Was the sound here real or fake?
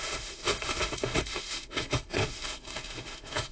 fake